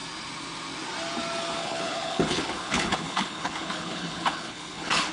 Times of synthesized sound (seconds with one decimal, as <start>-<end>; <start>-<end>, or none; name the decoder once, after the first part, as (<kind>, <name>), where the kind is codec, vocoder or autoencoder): 1.6-5.1 (codec, HILCodec)